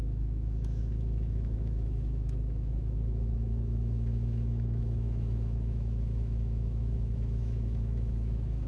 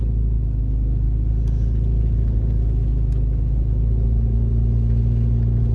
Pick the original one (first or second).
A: second